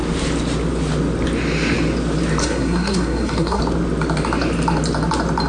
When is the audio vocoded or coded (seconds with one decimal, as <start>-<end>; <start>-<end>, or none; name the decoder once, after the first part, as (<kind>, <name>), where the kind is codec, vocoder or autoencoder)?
2.4-3.6 (codec, SNAC)